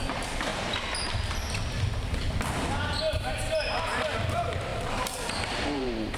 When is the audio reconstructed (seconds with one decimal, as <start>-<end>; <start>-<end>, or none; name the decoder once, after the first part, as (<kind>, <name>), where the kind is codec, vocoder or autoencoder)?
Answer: 4.7-6.2 (vocoder, BigVGAN v2)